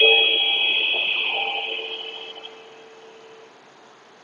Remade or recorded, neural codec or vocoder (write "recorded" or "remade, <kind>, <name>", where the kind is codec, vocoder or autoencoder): recorded